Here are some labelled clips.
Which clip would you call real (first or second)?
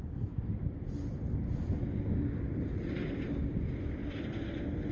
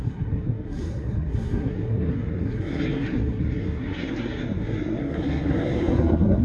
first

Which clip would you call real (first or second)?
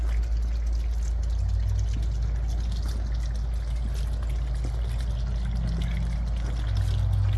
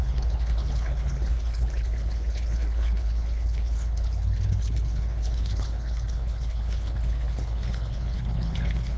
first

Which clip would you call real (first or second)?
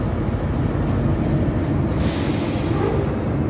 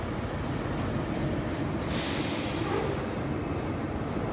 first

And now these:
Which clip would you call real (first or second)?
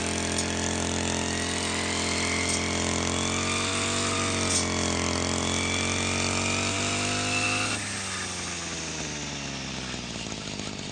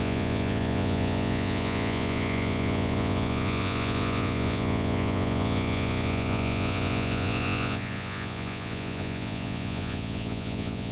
first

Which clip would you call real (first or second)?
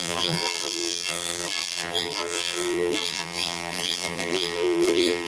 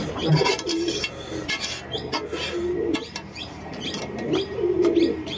second